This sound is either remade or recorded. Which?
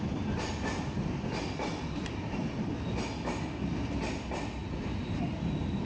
recorded